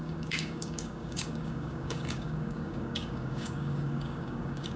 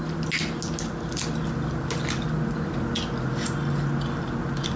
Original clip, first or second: second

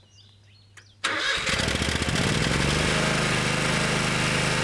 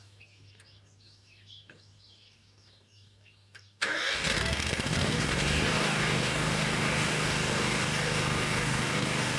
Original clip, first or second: first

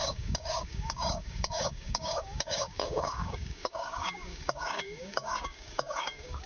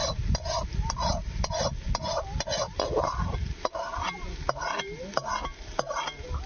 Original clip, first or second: second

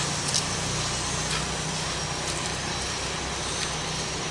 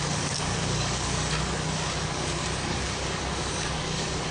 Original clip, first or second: first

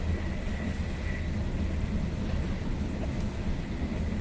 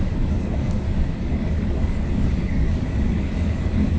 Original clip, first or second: first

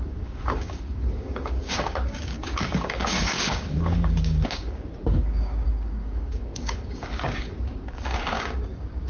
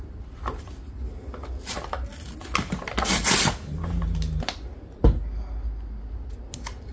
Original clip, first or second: second